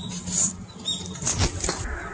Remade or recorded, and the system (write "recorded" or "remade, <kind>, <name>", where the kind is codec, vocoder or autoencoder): recorded